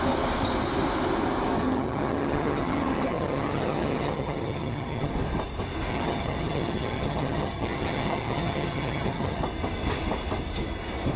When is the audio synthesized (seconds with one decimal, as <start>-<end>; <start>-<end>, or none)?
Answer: 1.6-5.1; 5.9-9.4